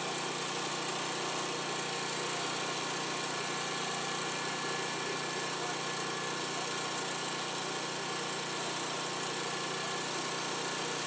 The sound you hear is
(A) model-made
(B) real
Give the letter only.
B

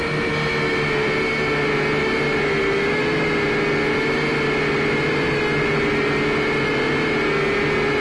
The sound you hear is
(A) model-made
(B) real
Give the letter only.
B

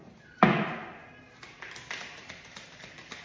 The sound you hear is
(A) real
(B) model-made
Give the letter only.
A